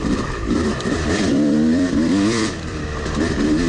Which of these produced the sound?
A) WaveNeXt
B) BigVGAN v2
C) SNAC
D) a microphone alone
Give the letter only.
B